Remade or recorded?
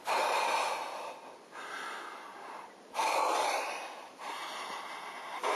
recorded